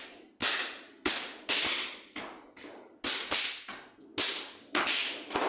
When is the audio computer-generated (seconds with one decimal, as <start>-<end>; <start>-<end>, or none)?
none